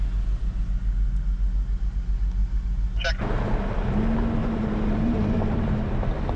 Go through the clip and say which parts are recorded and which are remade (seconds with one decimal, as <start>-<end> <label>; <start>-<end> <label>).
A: 0.0-4.4 recorded; 4.4-5.9 remade; 5.9-6.4 recorded